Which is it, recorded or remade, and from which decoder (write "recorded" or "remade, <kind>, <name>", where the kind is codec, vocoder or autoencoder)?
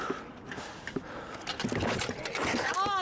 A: recorded